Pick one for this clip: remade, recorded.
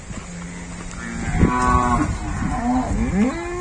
recorded